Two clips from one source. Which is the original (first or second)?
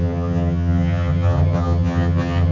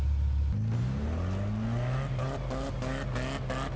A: second